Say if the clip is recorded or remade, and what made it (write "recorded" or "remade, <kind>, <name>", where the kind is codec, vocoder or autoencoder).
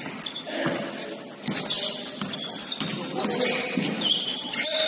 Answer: recorded